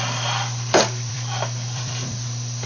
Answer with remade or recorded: remade